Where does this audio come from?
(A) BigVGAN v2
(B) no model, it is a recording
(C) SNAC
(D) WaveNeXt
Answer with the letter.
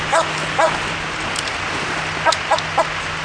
B